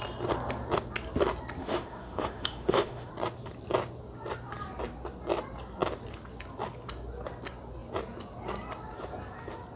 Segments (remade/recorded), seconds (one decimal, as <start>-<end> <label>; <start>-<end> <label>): 0.0-1.6 recorded; 1.6-3.1 remade; 3.1-9.8 recorded